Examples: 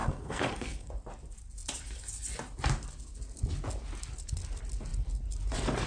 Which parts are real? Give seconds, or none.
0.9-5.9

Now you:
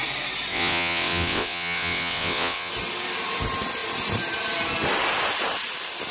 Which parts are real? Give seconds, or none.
0.0-0.5; 2.7-6.1

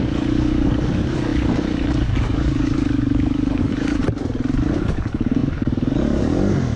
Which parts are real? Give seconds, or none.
4.0-4.8

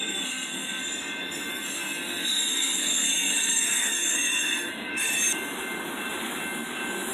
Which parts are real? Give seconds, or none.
0.8-1.5; 4.9-7.1

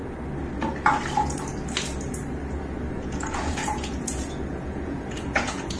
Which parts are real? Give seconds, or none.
0.0-2.9

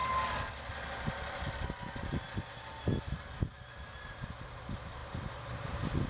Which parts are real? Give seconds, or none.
0.0-6.1

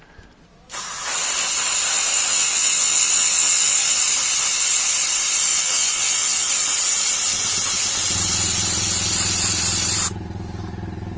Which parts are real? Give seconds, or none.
0.0-2.3; 4.0-5.5; 6.5-11.2

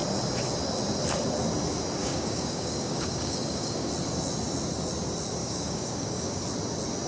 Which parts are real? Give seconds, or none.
0.0-2.0; 3.9-5.4; 6.4-7.1